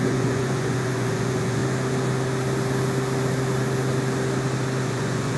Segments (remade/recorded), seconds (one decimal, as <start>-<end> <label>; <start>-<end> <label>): 0.0-1.6 remade; 1.6-4.8 recorded; 4.8-5.4 remade